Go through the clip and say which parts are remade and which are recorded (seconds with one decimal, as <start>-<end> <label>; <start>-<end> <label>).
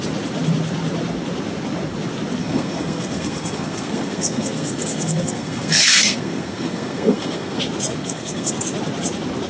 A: 0.0-2.4 recorded; 2.4-7.6 remade; 7.6-8.0 recorded; 8.0-8.5 remade; 8.5-9.5 recorded